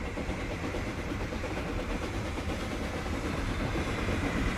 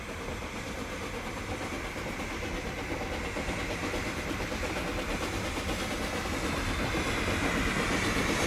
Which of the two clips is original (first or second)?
second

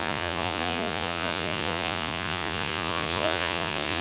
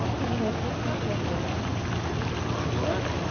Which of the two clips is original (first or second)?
second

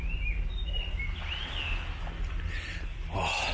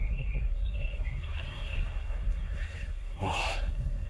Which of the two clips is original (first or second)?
first